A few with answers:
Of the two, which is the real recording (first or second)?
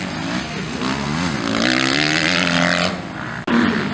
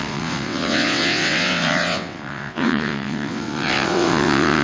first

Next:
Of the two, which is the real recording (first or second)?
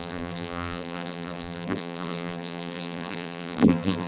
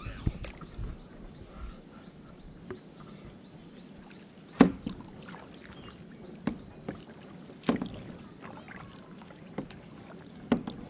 second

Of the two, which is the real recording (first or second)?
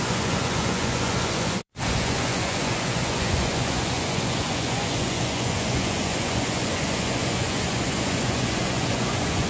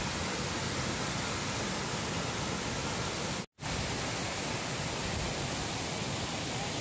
second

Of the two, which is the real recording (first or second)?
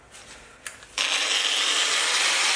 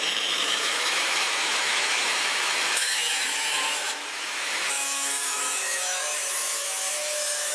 first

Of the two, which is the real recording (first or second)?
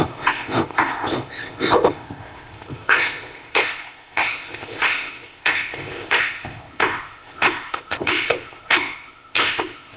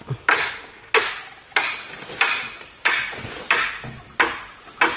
second